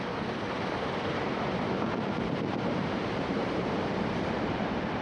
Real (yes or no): no